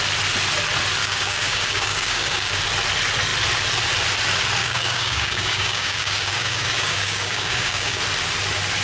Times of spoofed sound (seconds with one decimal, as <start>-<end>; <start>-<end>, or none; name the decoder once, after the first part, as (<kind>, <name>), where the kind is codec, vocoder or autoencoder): 1.0-2.6 (codec, DAC); 4.6-8.0